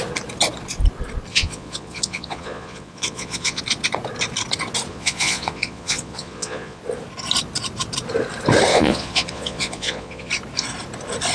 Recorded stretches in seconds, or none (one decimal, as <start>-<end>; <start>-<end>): 0.0-1.3; 3.6-4.9; 6.8-8.7; 10.3-11.3